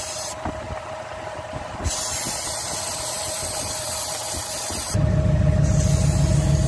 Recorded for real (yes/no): yes